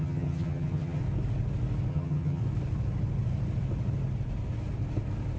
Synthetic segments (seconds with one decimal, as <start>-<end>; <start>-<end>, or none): 0.0-1.0; 1.9-2.4